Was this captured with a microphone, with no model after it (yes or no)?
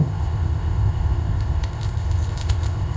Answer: no